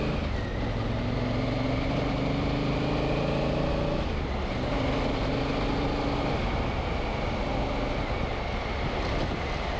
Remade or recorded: recorded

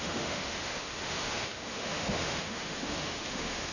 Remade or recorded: remade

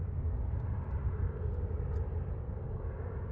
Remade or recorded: recorded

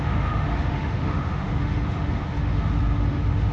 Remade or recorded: remade